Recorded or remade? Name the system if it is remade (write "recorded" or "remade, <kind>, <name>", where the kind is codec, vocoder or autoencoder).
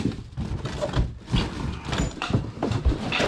recorded